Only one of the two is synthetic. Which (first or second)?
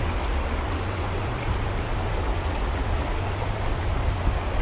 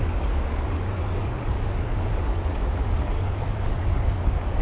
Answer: second